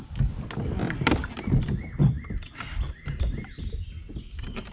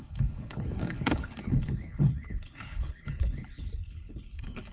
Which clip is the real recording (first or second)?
first